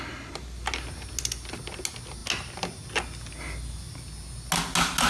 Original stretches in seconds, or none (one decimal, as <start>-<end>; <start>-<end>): 0.0-5.1